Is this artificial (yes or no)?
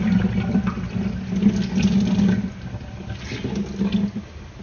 no